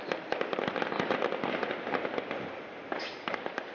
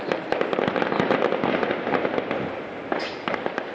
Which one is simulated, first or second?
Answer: first